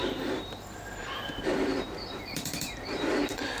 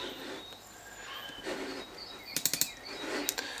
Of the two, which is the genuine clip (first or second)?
second